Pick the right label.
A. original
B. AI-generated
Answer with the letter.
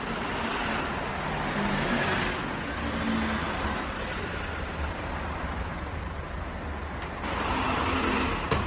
A